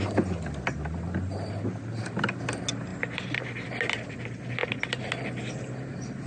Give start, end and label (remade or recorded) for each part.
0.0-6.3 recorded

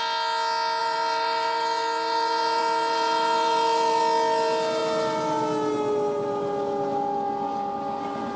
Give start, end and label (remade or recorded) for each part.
0.0-0.8 recorded; 0.8-4.0 remade; 4.0-8.4 recorded

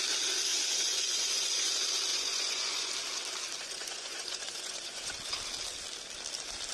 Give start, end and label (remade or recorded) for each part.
0.0-0.5 recorded; 0.5-1.7 remade; 1.7-2.1 recorded; 2.1-2.9 remade; 2.9-3.6 recorded; 3.6-5.1 remade; 5.1-6.7 recorded

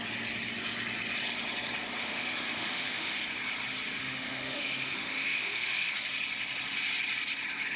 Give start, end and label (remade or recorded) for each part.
0.0-2.0 recorded; 2.0-3.2 remade; 3.2-4.0 recorded; 4.0-5.9 remade; 5.9-7.8 recorded